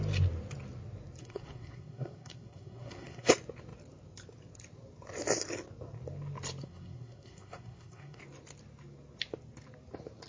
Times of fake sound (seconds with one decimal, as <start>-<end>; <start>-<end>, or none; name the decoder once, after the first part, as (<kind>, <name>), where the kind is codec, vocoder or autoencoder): 1.2-3.3 (codec, SNAC); 6.6-8.2